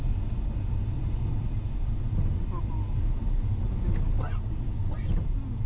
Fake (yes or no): no